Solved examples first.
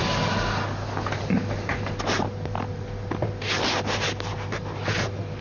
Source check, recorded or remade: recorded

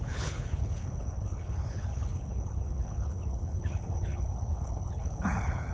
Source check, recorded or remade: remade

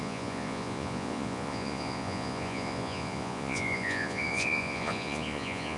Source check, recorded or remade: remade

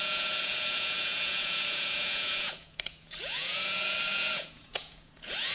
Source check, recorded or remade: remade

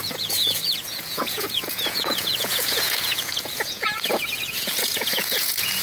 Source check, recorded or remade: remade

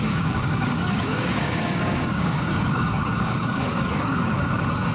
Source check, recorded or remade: remade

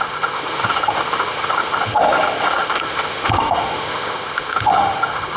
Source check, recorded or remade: remade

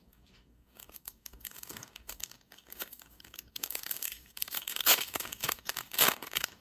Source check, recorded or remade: remade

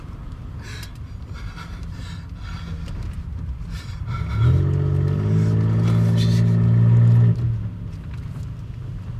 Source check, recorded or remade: recorded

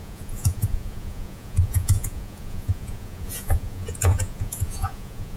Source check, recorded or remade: remade